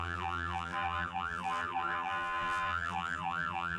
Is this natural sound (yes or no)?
no